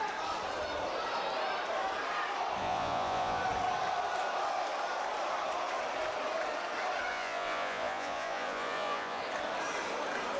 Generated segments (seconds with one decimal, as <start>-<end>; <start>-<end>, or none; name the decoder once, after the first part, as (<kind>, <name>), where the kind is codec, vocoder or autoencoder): 2.6-3.4 (vocoder, Vocos); 7.1-9.2